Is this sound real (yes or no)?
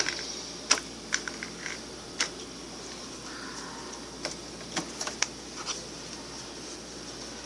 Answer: yes